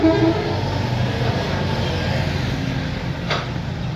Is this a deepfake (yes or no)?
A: no